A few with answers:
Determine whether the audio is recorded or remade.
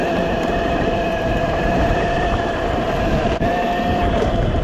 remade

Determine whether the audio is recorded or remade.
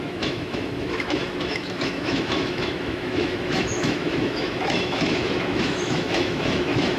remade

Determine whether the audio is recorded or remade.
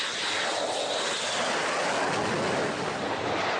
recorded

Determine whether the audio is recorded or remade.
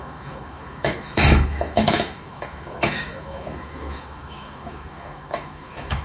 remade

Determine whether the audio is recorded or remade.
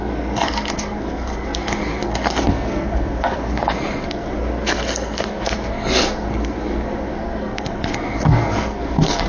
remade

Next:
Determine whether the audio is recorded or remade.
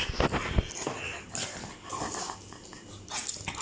recorded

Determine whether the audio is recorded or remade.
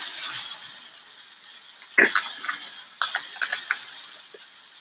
recorded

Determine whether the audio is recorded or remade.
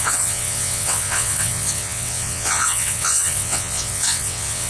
remade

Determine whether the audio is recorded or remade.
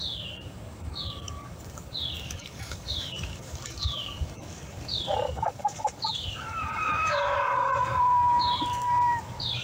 remade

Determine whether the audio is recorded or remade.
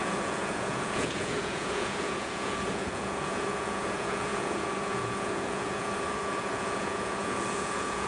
remade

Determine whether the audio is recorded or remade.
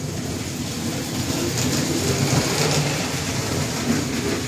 remade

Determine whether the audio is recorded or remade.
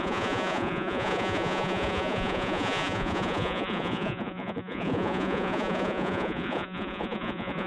remade